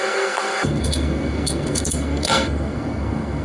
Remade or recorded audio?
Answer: remade